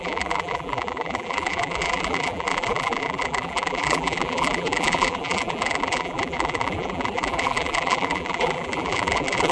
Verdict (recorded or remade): remade